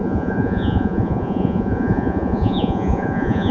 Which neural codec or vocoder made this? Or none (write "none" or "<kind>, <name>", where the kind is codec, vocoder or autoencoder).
vocoder, Vocos